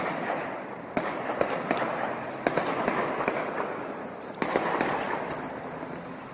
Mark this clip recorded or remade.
recorded